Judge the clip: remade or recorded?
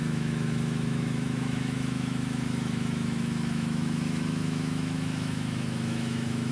remade